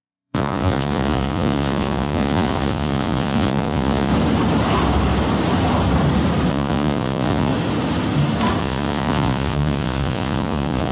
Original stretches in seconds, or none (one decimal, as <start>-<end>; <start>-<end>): 4.1-6.5; 7.5-8.6